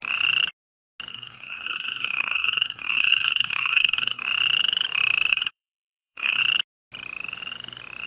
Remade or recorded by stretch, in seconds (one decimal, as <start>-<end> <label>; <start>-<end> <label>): 0.0-1.1 recorded; 1.1-4.2 remade; 4.2-5.3 recorded; 5.3-6.4 remade; 6.4-8.1 recorded